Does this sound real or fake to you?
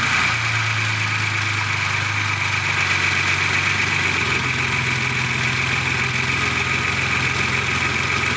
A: real